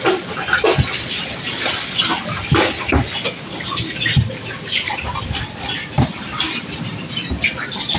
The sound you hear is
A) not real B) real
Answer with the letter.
B